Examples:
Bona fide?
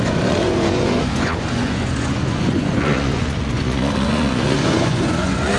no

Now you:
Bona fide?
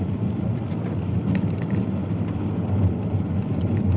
yes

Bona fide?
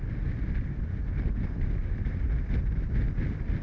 yes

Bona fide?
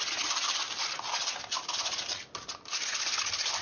yes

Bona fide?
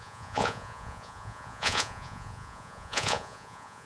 no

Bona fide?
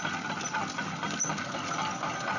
yes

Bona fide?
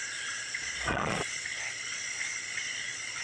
no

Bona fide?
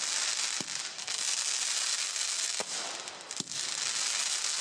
yes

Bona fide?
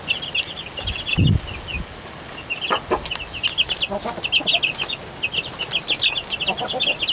yes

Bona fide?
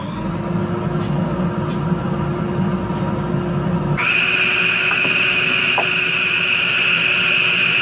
yes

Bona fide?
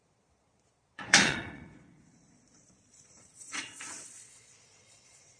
no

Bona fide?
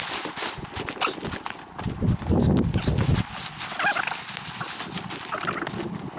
yes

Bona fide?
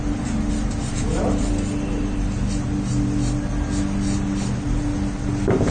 yes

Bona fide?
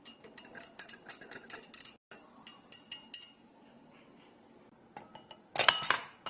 yes